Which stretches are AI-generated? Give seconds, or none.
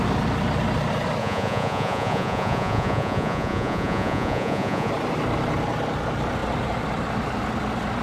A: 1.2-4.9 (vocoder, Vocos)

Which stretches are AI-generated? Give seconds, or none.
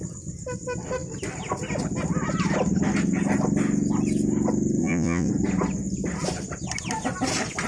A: 4.8-5.3 (vocoder, Vocos)